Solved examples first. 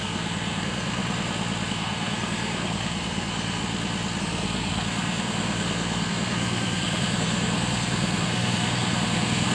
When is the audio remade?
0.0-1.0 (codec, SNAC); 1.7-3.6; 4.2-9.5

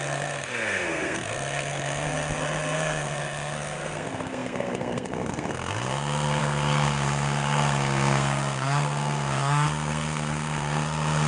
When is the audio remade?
0.0-11.3 (codec, SNAC)